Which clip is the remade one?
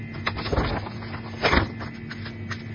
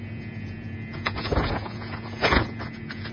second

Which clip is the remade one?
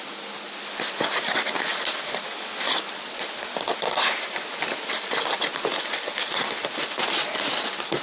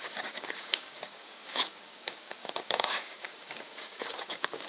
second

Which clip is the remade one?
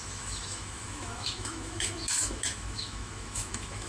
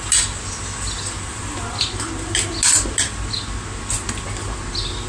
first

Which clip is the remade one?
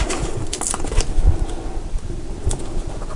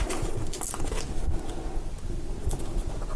first